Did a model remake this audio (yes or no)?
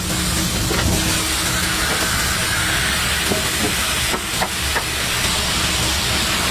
no